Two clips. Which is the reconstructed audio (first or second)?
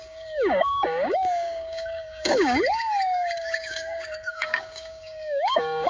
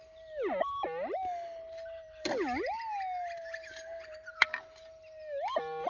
first